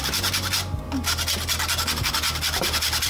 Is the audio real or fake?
real